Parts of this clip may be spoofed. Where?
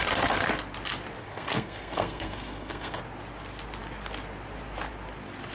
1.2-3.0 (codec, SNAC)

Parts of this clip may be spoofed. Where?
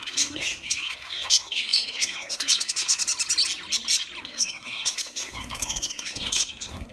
0.0-3.0 (codec, SNAC); 4.2-6.9